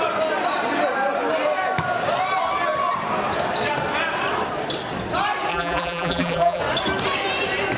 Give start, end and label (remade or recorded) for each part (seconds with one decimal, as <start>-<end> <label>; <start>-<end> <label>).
0.0-5.5 recorded; 5.5-6.6 remade; 6.6-7.8 recorded